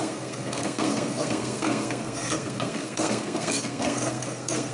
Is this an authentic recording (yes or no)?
no